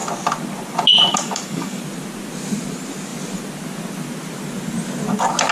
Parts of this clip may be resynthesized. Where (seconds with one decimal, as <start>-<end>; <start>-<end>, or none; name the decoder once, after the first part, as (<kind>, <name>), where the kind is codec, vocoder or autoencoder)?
1.1-1.8 (codec, DAC)